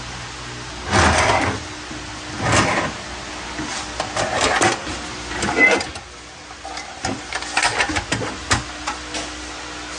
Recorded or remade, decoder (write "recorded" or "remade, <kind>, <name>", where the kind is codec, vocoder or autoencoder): recorded